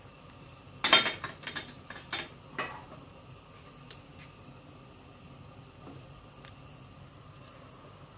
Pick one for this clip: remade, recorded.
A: recorded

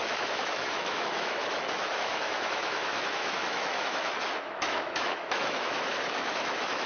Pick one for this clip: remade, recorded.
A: remade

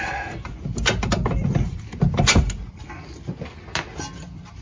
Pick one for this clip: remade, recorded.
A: recorded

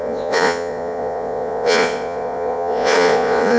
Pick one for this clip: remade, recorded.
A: remade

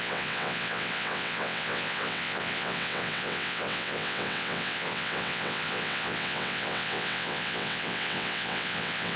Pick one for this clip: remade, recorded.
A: remade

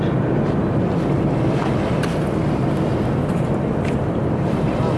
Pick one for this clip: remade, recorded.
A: recorded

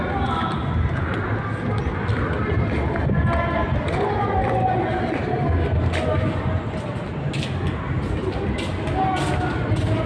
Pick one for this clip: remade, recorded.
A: recorded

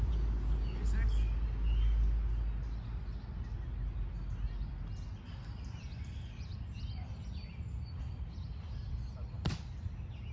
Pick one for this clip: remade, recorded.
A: recorded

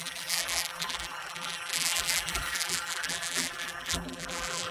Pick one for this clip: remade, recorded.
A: remade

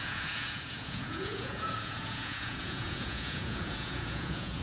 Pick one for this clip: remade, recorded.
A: remade